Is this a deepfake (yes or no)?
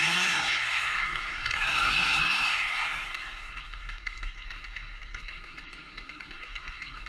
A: yes